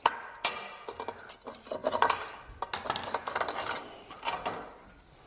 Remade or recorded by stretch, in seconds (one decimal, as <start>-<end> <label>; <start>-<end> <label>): 0.0-5.3 recorded